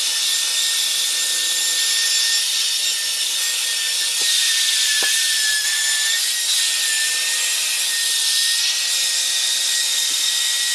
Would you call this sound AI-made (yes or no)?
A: no